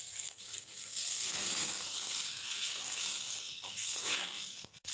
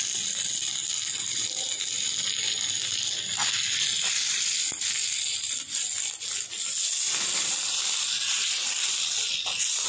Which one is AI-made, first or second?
first